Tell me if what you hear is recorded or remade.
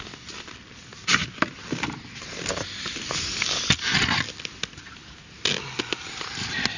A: recorded